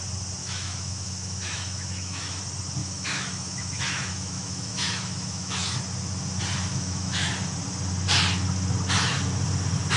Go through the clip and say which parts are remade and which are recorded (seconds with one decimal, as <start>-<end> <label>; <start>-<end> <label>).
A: 0.0-0.4 recorded; 0.4-2.4 remade; 2.4-2.8 recorded; 2.8-5.8 remade; 5.8-6.7 recorded; 6.7-7.3 remade; 7.3-10.0 recorded